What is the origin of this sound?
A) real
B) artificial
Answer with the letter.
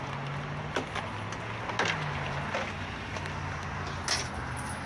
A